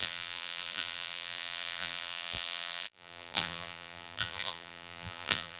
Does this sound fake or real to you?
fake